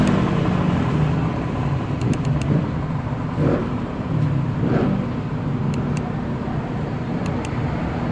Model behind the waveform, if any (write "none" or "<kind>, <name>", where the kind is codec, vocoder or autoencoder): vocoder, BigVGAN v2